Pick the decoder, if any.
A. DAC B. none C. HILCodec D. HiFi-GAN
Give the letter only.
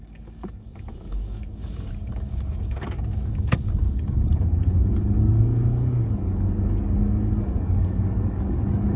A